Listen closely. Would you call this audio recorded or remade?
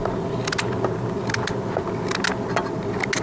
recorded